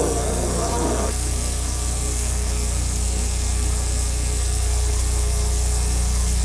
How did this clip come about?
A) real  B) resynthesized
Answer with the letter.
B